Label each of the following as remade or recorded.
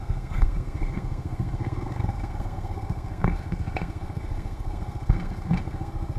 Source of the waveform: remade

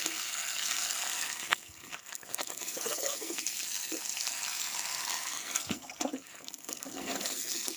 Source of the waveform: remade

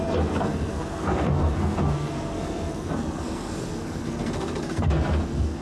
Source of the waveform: remade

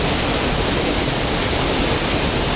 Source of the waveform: recorded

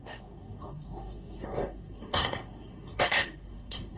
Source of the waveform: remade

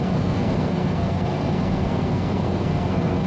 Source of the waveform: remade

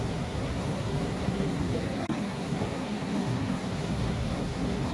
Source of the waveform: remade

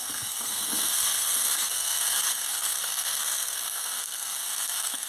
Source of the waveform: remade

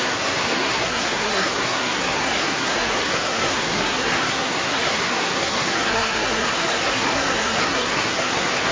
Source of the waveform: remade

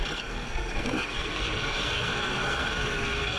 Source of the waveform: remade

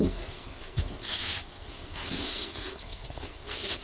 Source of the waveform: remade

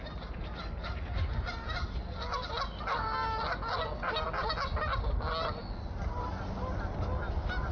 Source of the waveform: recorded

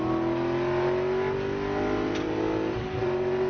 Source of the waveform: recorded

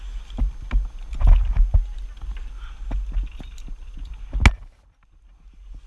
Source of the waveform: recorded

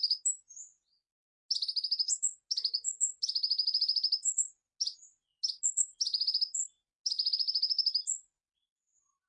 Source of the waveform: recorded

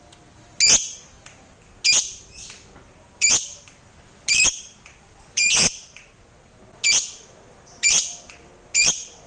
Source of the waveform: recorded